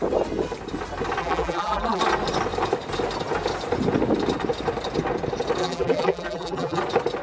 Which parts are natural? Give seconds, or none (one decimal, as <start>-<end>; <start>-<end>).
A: 0.0-1.2; 2.0-5.6; 6.8-7.2